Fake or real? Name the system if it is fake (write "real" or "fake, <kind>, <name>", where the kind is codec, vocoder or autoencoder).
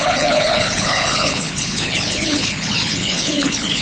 fake, codec, HILCodec